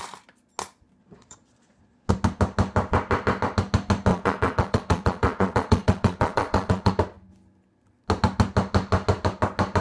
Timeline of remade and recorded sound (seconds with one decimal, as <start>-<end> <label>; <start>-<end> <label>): 0.0-1.0 recorded; 1.0-2.1 remade; 2.1-4.1 recorded; 4.1-6.9 remade; 6.9-9.8 recorded